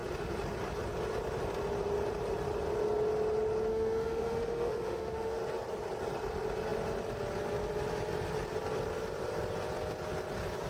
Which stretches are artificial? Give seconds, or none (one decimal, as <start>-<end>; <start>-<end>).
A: 3.7-5.4